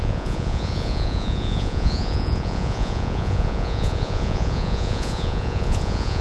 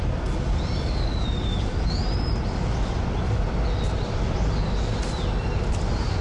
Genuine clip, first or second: second